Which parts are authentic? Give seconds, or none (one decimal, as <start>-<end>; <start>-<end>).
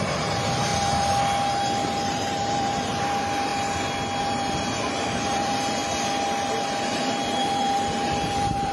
0.7-2.1; 3.5-4.2; 5.8-6.9